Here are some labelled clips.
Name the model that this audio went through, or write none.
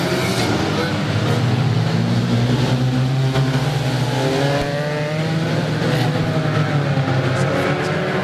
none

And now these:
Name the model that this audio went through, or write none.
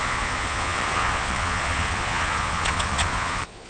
vocoder, Vocos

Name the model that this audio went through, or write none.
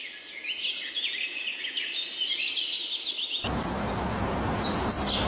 none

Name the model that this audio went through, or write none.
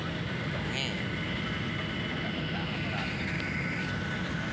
none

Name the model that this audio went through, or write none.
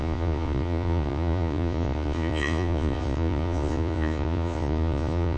vocoder, Vocos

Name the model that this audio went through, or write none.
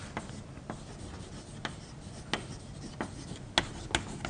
none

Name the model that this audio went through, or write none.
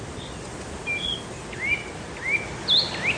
none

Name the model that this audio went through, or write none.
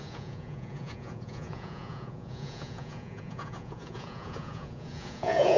vocoder, Vocos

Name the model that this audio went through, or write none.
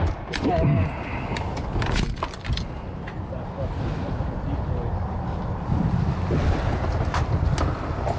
none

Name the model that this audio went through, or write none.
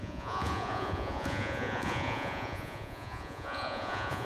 vocoder, Vocos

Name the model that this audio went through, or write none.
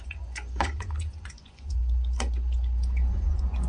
vocoder, Vocos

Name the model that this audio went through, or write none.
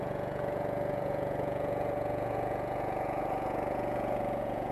vocoder, Vocos